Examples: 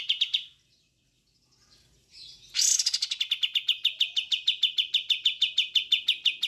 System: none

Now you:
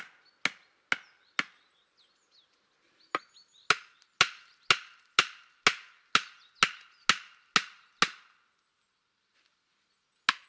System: none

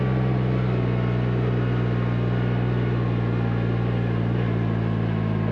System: none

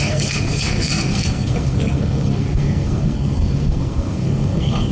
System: codec, SNAC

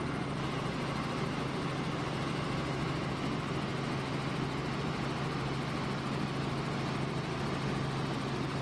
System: none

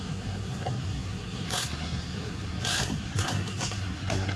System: codec, SNAC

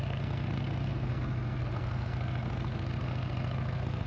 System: codec, SNAC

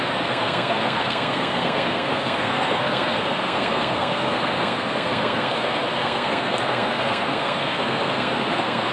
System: codec, SNAC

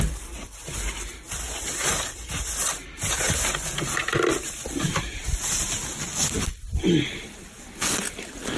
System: none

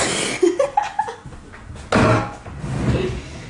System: none